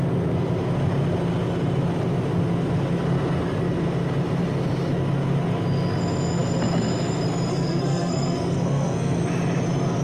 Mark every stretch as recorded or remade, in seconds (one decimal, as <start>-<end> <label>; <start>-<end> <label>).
0.0-7.5 recorded; 7.5-9.2 remade; 9.2-10.0 recorded

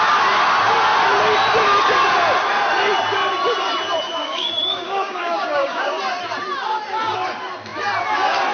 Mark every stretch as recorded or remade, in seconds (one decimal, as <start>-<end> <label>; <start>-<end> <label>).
0.0-4.2 recorded; 4.2-6.0 remade; 6.0-8.5 recorded

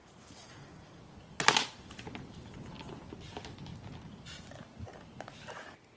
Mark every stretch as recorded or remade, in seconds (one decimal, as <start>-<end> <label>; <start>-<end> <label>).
0.0-1.0 remade; 1.0-6.0 recorded

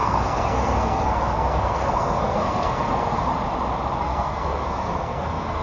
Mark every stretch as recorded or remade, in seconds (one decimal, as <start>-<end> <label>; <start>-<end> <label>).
0.0-3.3 remade; 3.3-4.0 recorded; 4.0-5.6 remade